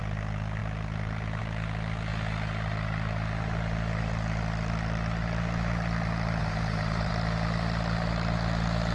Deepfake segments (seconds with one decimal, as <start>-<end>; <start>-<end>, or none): 6.4-7.1